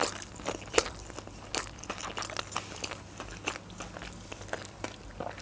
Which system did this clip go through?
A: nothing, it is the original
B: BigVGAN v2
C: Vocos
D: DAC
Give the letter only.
A